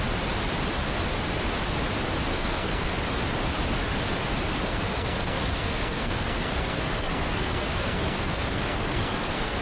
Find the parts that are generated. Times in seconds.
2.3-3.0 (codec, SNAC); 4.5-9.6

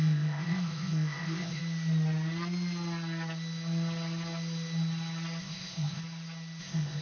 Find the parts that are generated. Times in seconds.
0.0-1.6 (codec, ZipCodec); 5.4-6.0; 6.6-7.0